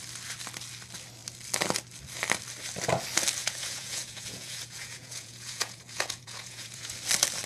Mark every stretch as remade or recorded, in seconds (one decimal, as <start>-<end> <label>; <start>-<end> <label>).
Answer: 0.0-3.4 recorded; 3.4-6.9 remade; 6.9-7.5 recorded